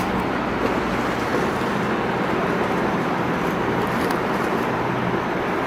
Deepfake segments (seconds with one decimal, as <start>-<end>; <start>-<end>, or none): none